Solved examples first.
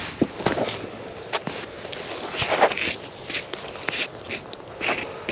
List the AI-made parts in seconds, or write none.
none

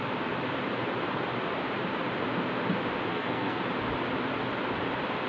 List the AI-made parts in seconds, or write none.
3.1-3.6 (codec, SNAC)

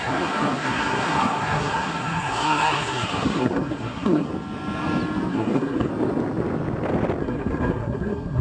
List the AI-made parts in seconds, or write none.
0.0-4.3 (codec, SNAC); 5.3-5.9; 7.2-8.4

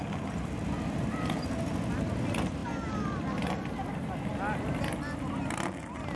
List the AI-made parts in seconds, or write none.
none